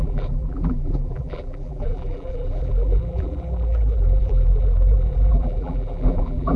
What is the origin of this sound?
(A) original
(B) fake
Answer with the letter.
B